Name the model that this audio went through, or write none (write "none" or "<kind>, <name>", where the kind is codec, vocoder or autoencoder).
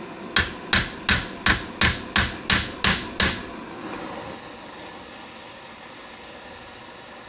none